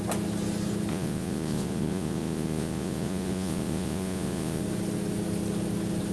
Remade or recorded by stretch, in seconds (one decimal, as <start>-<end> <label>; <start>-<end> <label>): 0.0-0.9 recorded; 0.9-4.6 remade; 4.6-6.1 recorded